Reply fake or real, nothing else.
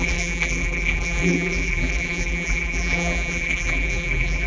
fake